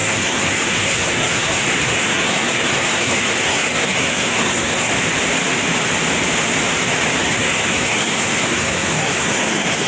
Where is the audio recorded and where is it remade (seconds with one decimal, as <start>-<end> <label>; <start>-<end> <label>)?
0.0-4.9 remade; 4.9-7.2 recorded; 7.2-9.9 remade